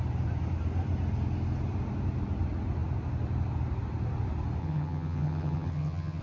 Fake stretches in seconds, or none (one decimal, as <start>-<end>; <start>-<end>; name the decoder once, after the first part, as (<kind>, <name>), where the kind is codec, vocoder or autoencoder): 4.6-6.2 (vocoder, HiFi-GAN)